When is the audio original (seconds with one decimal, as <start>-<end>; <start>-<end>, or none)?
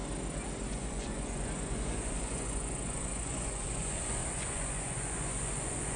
0.0-0.7